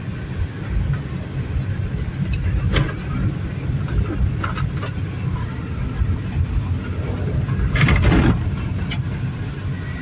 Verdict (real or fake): real